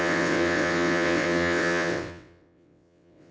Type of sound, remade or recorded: remade